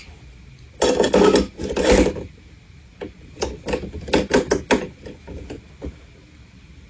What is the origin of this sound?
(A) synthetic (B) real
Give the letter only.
B